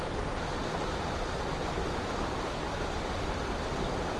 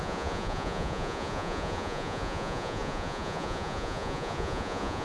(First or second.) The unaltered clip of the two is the first